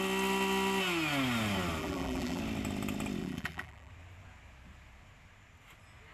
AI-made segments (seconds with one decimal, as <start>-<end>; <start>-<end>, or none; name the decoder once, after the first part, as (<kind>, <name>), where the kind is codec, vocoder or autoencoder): 1.8-2.4 (vocoder, BigVGAN v2); 3.2-3.9